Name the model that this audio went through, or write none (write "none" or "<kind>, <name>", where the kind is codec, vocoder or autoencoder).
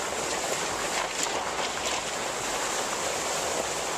none